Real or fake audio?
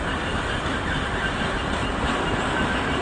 real